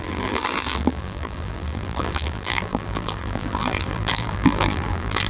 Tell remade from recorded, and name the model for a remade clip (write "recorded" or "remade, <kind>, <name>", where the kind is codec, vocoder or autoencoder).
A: remade, vocoder, BigVGAN v2